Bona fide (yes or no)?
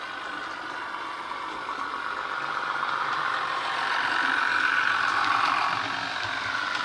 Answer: no